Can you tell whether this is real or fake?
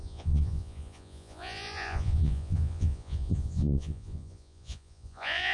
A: fake